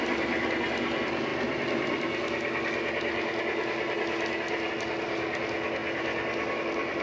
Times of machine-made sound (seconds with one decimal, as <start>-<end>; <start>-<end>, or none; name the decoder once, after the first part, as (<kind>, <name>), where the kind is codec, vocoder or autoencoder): none